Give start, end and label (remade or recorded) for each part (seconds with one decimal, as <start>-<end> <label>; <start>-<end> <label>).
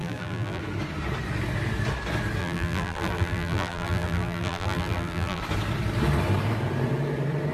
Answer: 0.0-0.6 remade; 0.6-2.4 recorded; 2.4-5.4 remade; 5.4-7.5 recorded